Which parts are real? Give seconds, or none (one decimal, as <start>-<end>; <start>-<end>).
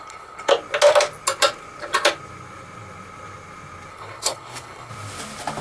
0.5-3.9; 4.9-5.6